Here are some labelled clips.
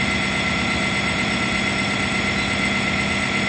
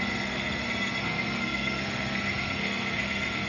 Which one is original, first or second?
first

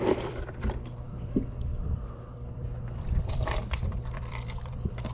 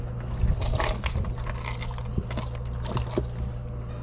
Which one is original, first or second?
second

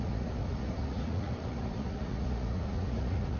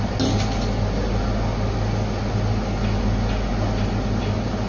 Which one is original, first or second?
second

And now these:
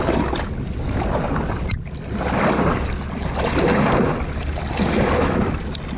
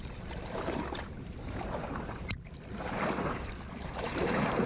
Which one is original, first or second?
first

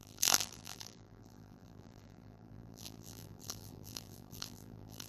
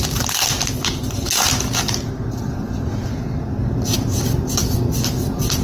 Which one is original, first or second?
second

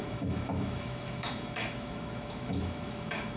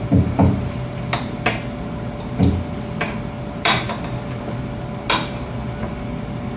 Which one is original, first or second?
second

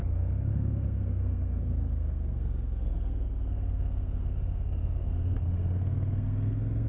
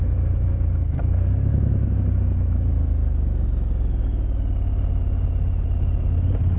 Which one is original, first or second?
second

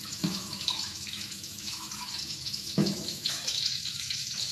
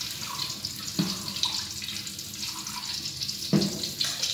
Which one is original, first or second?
second